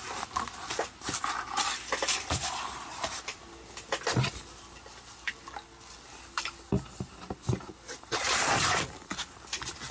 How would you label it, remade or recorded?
recorded